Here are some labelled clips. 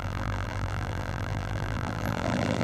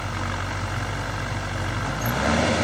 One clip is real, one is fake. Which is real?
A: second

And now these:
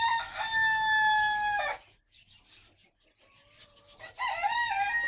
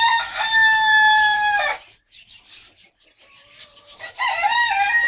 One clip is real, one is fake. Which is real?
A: first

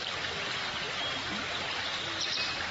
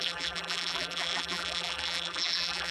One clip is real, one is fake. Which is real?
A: first